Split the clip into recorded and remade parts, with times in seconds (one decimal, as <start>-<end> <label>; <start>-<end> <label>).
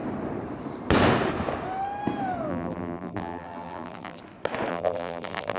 0.0-2.5 recorded; 2.5-4.2 remade; 4.2-4.7 recorded; 4.7-5.6 remade